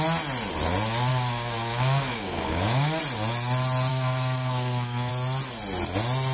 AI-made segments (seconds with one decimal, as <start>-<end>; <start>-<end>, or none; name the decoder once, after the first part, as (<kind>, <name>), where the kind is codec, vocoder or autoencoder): 1.1-3.0 (codec, DAC); 3.9-5.1